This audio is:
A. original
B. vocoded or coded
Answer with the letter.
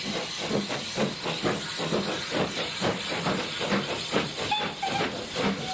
A